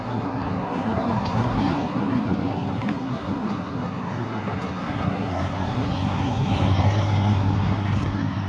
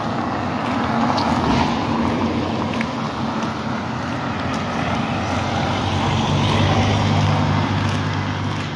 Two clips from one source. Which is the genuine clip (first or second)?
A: second